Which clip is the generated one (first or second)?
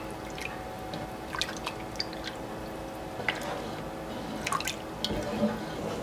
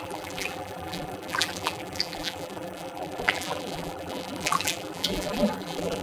second